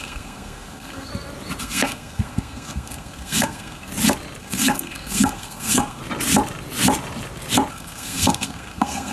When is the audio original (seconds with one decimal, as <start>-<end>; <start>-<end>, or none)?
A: 1.1-1.6; 3.9-4.4; 6.0-7.7